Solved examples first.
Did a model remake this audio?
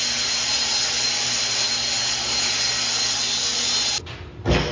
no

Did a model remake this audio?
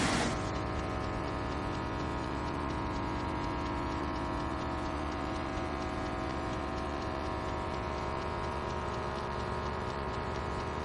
yes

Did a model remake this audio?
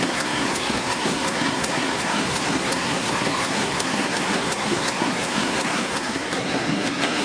yes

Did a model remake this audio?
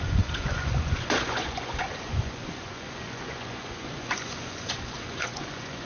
yes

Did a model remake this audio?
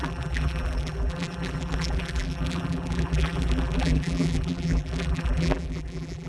yes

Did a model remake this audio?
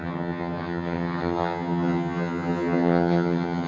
yes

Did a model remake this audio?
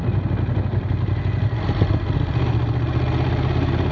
no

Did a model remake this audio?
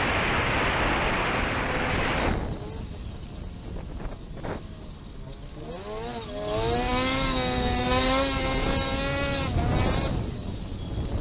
no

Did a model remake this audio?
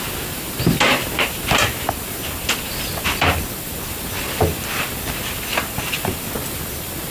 no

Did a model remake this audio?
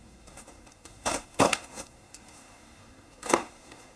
yes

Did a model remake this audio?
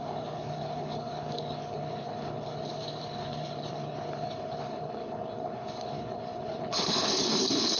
yes